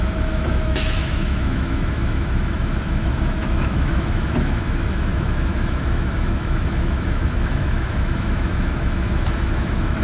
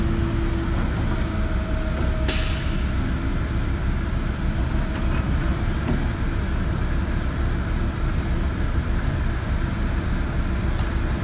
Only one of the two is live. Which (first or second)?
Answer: second